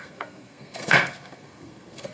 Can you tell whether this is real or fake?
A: fake